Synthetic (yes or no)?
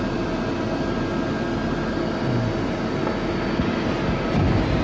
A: no